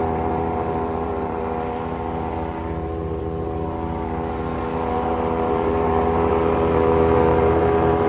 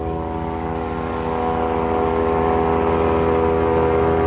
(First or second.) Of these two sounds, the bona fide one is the second